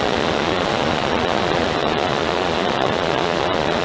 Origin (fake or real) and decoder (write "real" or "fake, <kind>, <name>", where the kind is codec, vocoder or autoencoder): fake, vocoder, Vocos